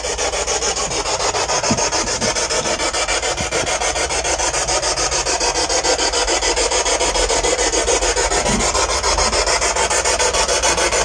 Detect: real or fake real